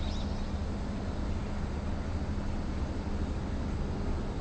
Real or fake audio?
real